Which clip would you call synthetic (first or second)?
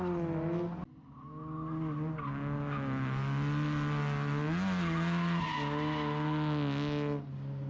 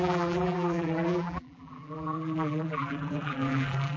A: second